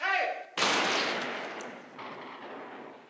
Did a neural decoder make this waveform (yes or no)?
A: no